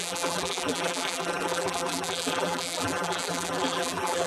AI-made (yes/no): yes